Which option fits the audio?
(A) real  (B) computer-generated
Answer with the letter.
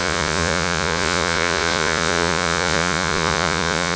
B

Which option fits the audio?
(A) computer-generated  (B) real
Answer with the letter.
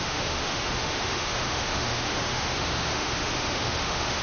A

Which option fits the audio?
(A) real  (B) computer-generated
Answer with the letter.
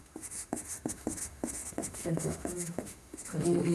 B